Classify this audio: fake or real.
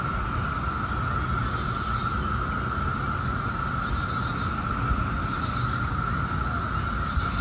real